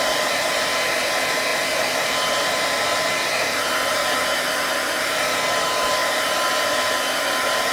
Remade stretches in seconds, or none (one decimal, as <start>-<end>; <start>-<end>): none